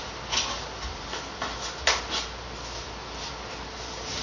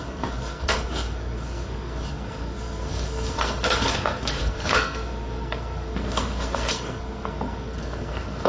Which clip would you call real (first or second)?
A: first